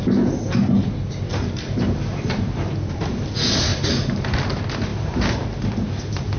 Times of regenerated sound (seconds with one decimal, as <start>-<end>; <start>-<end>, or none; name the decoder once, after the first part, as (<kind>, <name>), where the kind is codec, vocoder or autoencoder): 1.3-3.0 (vocoder, BigVGAN v2); 4.9-6.4